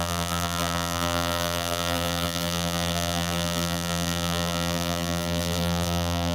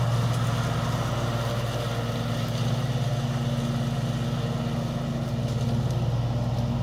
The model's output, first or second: first